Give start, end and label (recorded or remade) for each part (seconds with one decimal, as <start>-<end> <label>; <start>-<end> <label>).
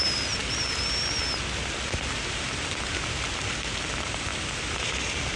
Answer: 0.0-5.4 recorded